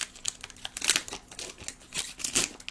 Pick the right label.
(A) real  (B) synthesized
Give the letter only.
A